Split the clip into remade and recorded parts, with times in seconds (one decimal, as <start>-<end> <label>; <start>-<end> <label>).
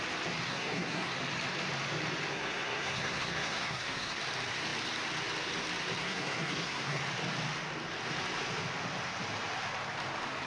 0.0-0.5 recorded; 0.5-1.1 remade; 1.1-2.3 recorded; 2.3-4.2 remade; 4.2-6.0 recorded; 6.0-7.0 remade; 7.0-10.5 recorded